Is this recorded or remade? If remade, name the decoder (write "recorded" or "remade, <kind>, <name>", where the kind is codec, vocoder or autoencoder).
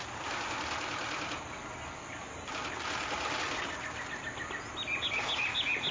recorded